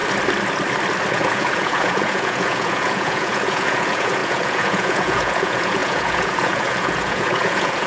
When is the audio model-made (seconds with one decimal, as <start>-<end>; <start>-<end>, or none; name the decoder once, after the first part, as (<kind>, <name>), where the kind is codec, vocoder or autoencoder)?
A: 1.1-7.9 (vocoder, Vocos)